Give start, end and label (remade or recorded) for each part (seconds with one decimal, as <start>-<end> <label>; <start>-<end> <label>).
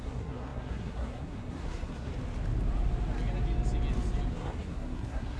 0.0-2.1 remade; 2.1-4.3 recorded; 4.3-5.4 remade